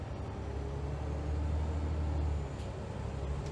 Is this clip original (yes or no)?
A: yes